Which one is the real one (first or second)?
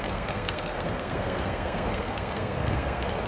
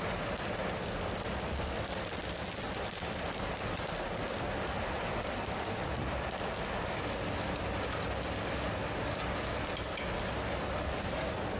second